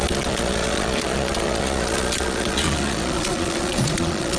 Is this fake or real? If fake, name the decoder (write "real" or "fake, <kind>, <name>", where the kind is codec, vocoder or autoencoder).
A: fake, vocoder, Vocos